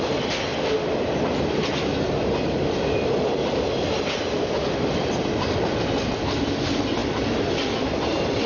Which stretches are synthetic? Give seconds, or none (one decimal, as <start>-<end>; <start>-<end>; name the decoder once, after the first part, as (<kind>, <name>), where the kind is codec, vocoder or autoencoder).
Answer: none